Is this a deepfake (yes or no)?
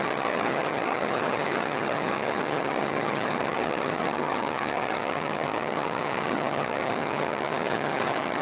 yes